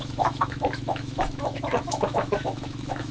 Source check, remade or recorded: remade